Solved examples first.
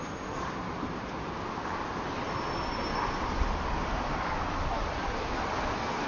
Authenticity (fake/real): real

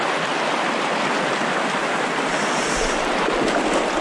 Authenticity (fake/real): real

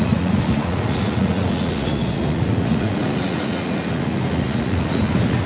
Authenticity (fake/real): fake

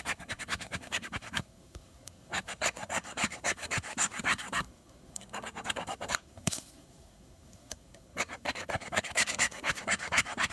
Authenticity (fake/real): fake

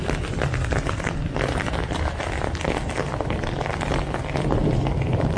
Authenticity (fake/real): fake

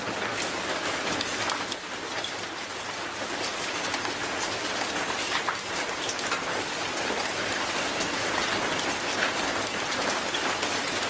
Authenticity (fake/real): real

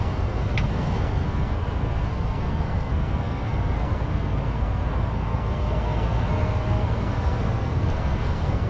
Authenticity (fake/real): fake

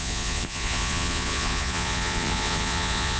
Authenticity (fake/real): fake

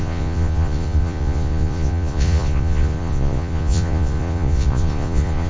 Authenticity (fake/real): fake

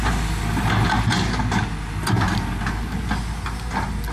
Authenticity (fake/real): real